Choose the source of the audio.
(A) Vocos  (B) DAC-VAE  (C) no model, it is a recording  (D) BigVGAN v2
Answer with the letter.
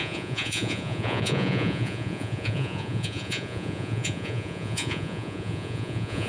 A